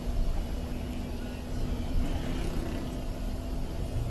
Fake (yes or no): no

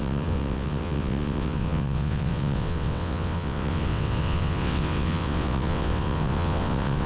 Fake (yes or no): yes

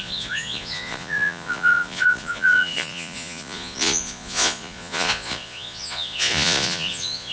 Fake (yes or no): yes